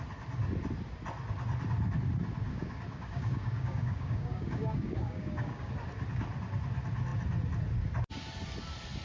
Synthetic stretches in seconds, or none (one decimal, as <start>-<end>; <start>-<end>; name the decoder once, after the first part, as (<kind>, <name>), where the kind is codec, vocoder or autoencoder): 2.5-5.7 (codec, DAC)